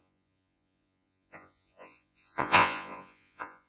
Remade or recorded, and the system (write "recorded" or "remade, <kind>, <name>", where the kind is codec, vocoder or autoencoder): remade, vocoder, Vocos